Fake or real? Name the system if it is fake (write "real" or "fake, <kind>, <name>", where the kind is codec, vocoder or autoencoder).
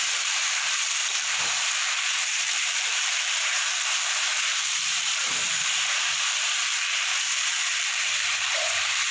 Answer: fake, vocoder, BigVGAN v2